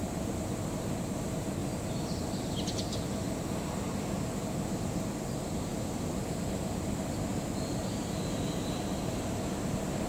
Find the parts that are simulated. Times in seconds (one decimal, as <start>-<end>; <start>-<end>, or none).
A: none